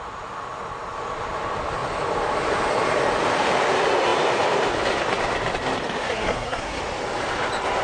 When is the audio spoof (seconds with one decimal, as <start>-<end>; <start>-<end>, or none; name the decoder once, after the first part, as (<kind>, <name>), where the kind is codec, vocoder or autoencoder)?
6.0-6.8 (codec, SNAC)